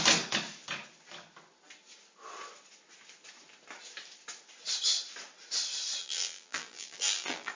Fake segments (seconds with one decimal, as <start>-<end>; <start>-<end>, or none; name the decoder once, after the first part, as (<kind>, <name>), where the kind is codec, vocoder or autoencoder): 6.0-7.5 (vocoder, BigVGAN v2)